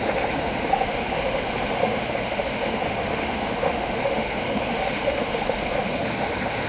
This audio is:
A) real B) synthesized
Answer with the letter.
B